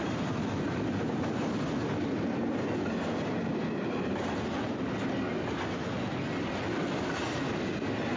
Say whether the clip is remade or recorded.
recorded